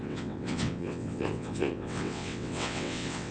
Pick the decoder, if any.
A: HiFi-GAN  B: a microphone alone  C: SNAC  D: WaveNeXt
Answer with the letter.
D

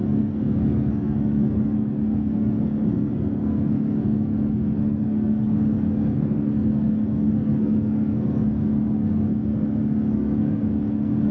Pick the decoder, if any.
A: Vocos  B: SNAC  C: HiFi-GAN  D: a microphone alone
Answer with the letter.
B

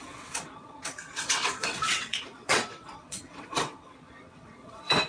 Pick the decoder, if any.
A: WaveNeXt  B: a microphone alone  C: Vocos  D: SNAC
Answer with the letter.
A